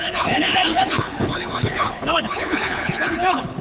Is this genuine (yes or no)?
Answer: no